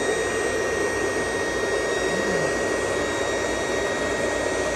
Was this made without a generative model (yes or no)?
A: yes